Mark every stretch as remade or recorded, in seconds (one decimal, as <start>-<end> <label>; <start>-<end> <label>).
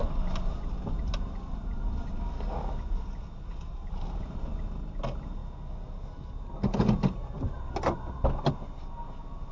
0.0-9.5 recorded